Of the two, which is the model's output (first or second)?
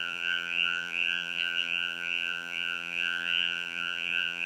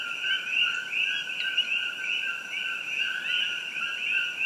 first